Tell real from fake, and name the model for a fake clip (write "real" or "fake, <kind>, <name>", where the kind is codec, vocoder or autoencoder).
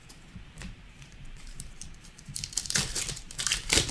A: fake, vocoder, BigVGAN v2